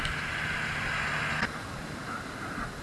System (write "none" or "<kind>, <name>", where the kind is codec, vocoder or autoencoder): none